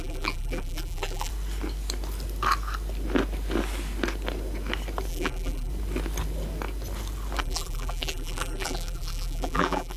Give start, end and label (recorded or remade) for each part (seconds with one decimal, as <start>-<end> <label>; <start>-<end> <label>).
0.0-1.3 remade; 1.3-5.1 recorded; 5.1-5.7 remade; 5.7-7.4 recorded; 7.4-10.0 remade